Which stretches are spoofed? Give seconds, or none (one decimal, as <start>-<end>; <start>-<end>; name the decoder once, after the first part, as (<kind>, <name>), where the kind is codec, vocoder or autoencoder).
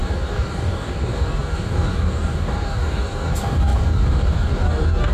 0.0-5.1 (codec, DAC)